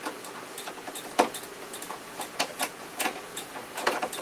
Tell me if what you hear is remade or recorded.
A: remade